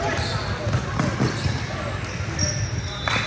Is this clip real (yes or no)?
yes